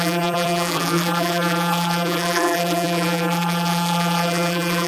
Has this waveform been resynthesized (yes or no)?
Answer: yes